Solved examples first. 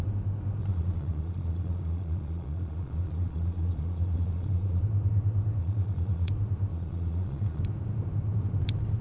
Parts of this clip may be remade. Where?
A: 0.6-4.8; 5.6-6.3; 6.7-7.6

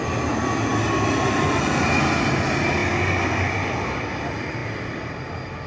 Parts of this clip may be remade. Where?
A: none